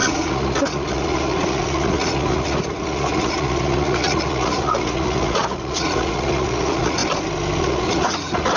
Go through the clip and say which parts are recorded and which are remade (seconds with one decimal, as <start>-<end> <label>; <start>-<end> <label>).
0.0-7.0 remade; 7.0-7.6 recorded; 7.6-8.6 remade